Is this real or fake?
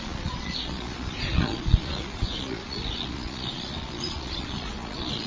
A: fake